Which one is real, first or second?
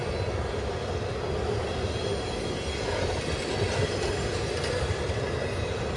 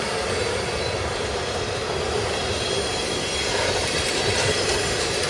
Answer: first